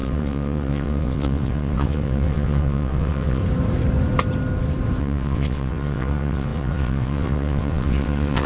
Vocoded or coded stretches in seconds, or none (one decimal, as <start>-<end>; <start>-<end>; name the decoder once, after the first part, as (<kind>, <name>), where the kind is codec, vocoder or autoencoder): 0.0-3.4 (vocoder, WaveNeXt); 5.0-8.5